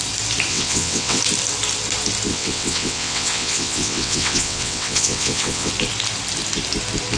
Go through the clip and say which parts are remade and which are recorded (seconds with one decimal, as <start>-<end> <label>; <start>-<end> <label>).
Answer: 0.0-0.5 recorded; 0.5-1.2 remade; 1.2-2.3 recorded; 2.3-5.7 remade; 5.7-7.2 recorded

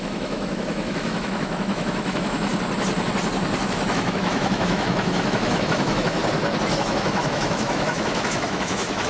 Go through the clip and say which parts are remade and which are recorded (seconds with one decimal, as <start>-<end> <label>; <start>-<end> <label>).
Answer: 0.0-2.5 remade; 2.5-3.6 recorded; 3.6-6.2 remade; 6.2-6.8 recorded; 6.8-9.1 remade

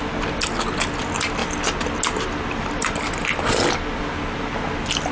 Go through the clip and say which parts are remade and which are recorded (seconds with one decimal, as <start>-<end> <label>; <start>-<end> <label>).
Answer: 0.0-5.1 recorded

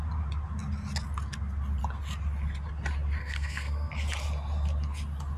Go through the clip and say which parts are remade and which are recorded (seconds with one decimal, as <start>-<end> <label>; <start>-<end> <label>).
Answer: 0.0-3.2 recorded; 3.2-3.9 remade; 3.9-5.4 recorded

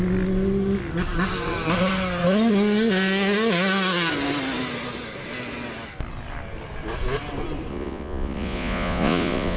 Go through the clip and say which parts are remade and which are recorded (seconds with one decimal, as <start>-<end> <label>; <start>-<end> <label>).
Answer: 0.0-7.7 recorded; 7.7-9.6 remade

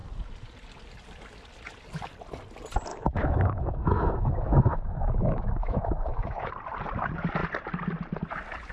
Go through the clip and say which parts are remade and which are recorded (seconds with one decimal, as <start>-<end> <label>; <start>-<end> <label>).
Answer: 0.0-2.9 recorded; 2.9-6.5 remade; 6.5-8.7 recorded

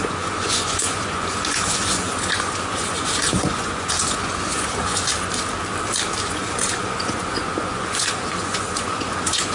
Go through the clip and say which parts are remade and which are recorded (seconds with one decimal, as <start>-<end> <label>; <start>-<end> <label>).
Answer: 0.0-5.1 remade; 5.1-6.2 recorded; 6.2-9.5 remade

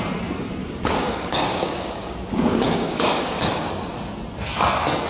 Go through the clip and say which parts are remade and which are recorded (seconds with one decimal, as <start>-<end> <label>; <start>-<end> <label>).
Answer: 0.0-0.6 recorded; 0.6-3.7 remade; 3.7-5.1 recorded